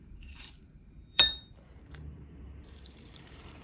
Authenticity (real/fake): fake